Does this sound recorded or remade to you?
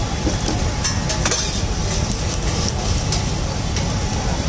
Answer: recorded